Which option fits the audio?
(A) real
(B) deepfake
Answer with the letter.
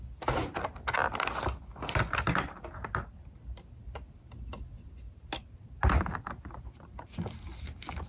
A